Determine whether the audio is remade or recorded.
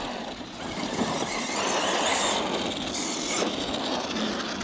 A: recorded